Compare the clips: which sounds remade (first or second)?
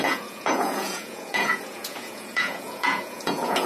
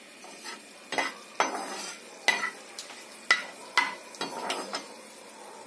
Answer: first